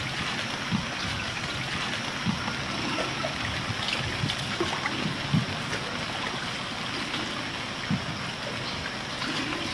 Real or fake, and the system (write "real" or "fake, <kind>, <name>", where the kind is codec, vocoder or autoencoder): real